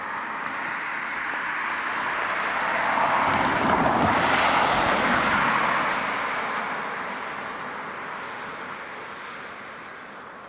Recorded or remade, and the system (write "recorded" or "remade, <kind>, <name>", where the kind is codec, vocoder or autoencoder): recorded